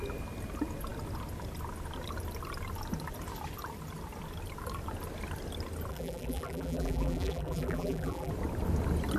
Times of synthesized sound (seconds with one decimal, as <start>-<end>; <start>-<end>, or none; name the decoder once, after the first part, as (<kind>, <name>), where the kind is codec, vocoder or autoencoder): 5.9-8.3 (vocoder, BigVGAN v2)